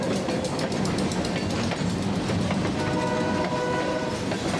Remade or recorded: recorded